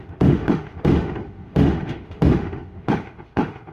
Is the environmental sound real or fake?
fake